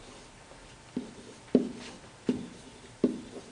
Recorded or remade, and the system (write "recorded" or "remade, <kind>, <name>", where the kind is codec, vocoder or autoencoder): recorded